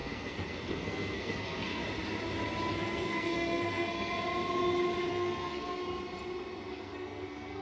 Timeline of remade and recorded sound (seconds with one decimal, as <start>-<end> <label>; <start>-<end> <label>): 0.0-1.8 remade; 1.8-2.7 recorded; 2.7-4.1 remade; 4.1-5.1 recorded; 5.1-5.8 remade; 5.8-6.7 recorded; 6.7-7.6 remade